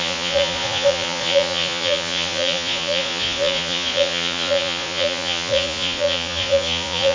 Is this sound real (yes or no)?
no